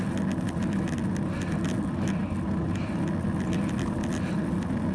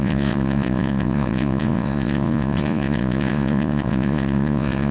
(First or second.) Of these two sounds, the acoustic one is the first